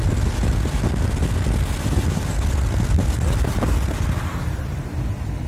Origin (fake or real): real